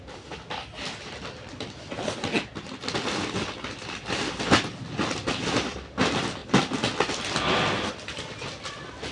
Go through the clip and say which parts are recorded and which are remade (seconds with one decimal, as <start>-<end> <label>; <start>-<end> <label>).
0.0-9.1 recorded